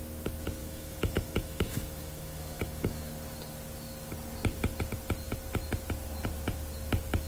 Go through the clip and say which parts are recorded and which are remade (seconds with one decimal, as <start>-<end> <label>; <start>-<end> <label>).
0.0-0.6 recorded; 0.6-3.1 remade; 3.1-7.3 recorded